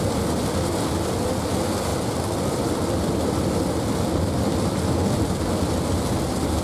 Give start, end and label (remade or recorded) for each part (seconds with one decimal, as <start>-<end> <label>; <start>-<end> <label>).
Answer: 0.0-6.6 recorded